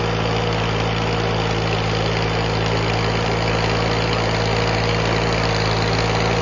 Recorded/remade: recorded